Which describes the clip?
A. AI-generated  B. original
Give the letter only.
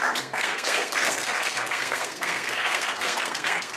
A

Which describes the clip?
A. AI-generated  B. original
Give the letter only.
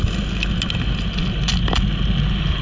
B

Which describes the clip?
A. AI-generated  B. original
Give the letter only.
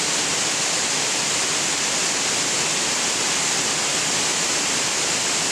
B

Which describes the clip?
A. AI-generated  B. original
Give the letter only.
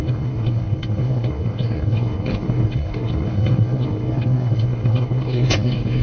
A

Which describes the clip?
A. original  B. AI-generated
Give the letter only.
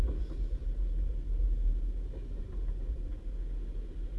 A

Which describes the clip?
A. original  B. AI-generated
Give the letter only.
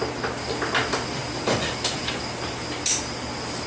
A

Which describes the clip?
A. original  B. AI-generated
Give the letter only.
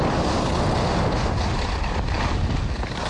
A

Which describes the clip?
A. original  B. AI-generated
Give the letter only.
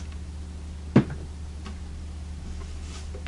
A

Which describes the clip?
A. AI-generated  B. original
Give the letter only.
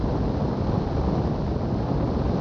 B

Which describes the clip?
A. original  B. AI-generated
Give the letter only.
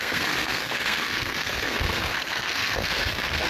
B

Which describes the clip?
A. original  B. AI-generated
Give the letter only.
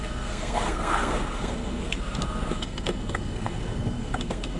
B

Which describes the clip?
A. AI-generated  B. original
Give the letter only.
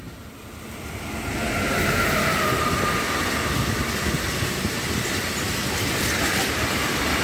B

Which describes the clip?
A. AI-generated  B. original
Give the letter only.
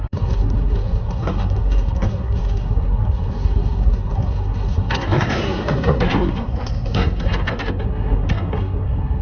A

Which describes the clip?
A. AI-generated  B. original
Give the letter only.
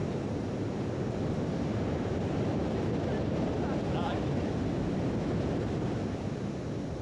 B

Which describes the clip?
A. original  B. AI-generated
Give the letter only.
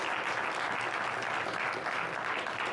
A